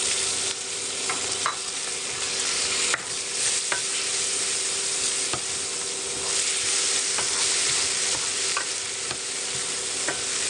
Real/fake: real